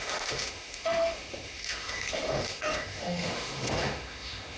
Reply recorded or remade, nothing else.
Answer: remade